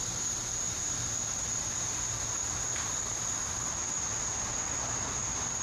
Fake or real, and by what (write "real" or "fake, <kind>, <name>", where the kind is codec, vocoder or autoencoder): real